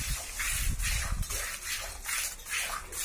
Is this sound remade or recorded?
recorded